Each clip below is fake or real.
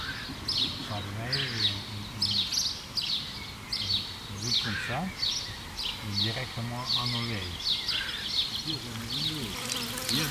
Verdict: real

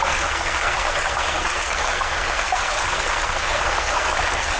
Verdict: fake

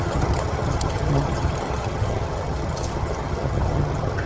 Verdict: fake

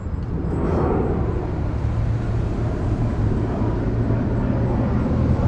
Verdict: real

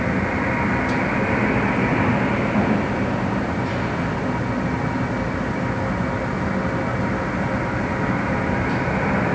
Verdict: real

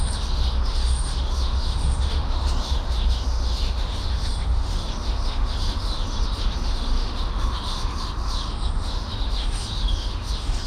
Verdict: fake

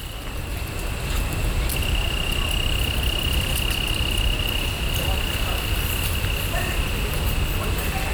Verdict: real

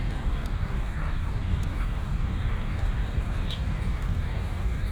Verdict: fake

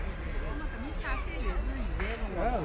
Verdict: real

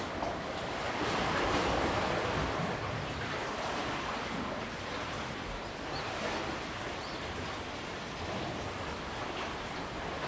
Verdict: real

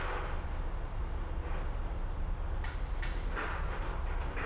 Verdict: real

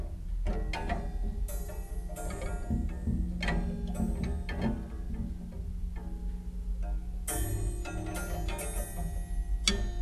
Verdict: real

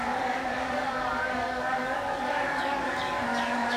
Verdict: fake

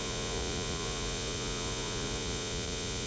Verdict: fake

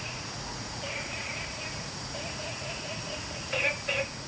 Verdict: fake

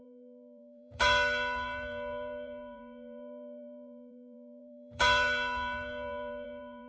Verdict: fake